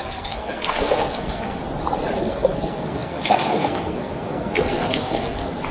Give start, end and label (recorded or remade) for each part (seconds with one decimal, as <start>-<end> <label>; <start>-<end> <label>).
0.0-1.6 remade; 1.6-2.2 recorded; 2.2-5.7 remade